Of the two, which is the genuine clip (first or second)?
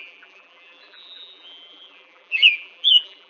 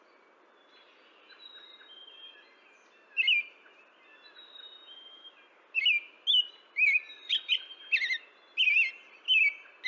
second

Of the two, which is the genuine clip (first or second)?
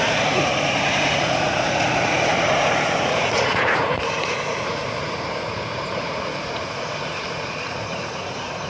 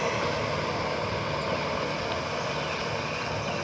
second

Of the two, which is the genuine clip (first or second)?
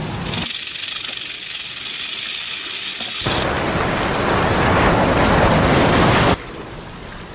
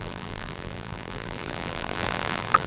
first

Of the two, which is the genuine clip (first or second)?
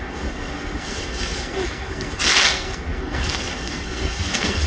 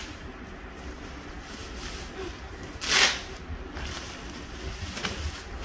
second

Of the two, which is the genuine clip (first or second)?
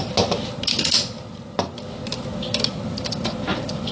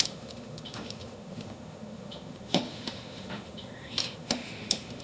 first